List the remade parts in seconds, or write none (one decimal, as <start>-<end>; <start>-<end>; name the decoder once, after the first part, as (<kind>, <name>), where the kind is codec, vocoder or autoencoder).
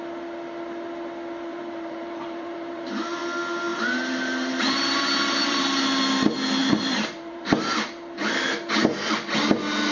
1.5-3.2 (vocoder, BigVGAN v2); 3.7-5.6; 6.6-7.5